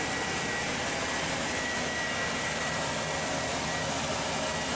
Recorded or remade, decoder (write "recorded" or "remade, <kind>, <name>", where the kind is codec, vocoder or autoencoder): recorded